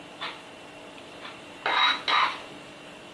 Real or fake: real